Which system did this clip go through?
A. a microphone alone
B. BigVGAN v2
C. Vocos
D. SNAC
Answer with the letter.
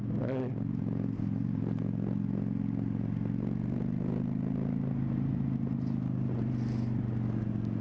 A